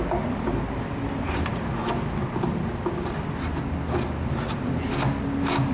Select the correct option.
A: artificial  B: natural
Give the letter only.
B